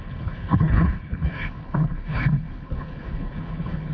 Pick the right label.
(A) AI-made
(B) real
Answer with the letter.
A